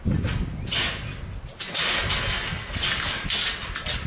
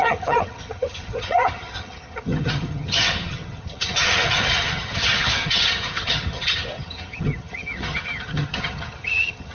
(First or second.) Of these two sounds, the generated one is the second